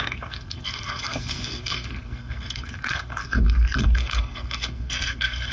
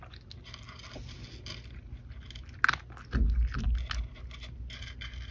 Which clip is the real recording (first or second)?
second